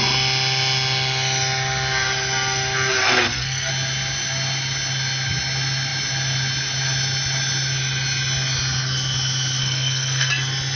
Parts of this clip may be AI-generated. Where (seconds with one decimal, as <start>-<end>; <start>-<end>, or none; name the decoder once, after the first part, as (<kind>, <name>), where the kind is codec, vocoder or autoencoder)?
3.0-3.7 (codec, SNAC); 9.6-10.3